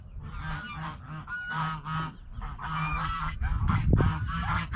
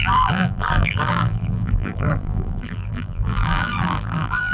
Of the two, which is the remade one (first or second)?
second